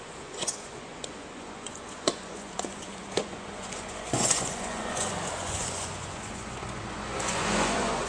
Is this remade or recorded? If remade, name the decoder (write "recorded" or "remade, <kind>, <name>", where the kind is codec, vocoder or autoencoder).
remade, vocoder, Vocos